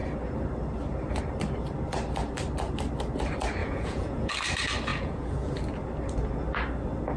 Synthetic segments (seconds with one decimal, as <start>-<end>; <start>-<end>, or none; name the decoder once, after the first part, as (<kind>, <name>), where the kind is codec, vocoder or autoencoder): 3.6-4.3 (vocoder, Vocos); 4.9-5.5